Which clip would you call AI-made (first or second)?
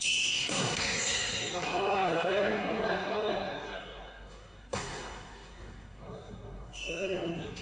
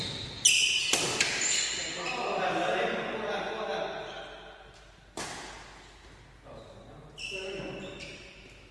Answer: first